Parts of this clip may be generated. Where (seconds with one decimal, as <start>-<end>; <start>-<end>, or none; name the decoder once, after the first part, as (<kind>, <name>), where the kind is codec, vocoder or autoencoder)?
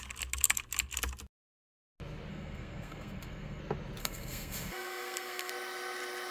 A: 2.3-3.6 (codec, SNAC); 4.0-5.5